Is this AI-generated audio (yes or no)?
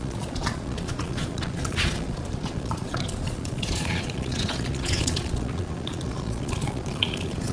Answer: yes